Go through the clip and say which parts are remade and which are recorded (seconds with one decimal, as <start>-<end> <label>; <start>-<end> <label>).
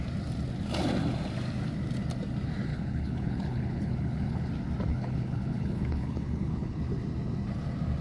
0.0-2.7 recorded; 2.7-4.5 remade; 4.5-4.9 recorded; 4.9-6.8 remade; 6.8-8.0 recorded